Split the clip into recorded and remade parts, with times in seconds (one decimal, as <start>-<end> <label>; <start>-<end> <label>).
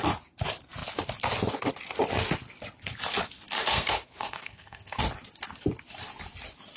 0.0-3.7 recorded; 3.7-5.0 remade; 5.0-6.8 recorded